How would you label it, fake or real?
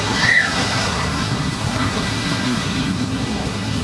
fake